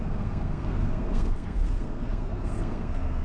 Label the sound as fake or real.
fake